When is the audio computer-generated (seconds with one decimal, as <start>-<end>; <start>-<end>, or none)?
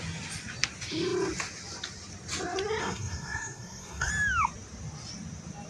2.8-4.1